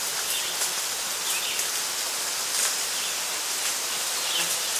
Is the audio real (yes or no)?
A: yes